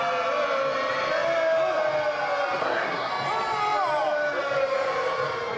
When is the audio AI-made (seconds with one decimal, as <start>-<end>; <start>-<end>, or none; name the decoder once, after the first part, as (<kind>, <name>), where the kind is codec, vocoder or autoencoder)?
2.6-3.1 (codec, SNAC)